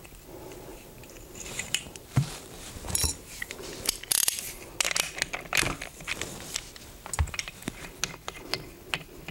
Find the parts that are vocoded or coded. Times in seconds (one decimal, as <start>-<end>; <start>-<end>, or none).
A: 0.7-2.7